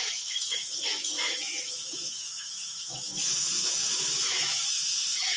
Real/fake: fake